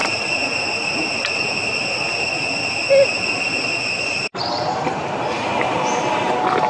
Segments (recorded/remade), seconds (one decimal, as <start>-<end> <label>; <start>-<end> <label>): 0.0-4.0 recorded; 4.0-6.7 remade